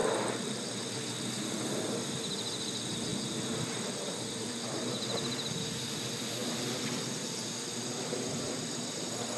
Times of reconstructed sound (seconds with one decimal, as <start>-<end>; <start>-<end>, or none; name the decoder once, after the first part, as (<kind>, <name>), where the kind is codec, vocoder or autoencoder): 0.0-1.2 (vocoder, BigVGAN v2); 3.1-4.5